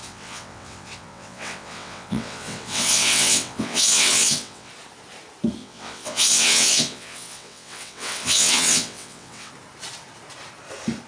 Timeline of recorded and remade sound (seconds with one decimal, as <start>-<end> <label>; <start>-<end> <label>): 0.0-4.7 remade; 4.7-5.6 recorded; 5.6-9.5 remade; 9.5-11.1 recorded